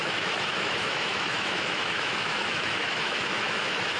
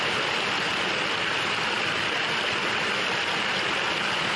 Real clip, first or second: second